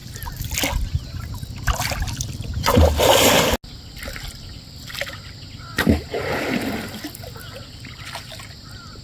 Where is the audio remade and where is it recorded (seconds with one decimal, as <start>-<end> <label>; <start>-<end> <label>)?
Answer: 0.0-9.0 recorded